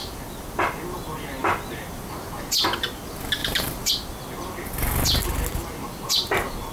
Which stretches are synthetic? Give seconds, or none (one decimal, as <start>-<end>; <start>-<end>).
3.4-3.9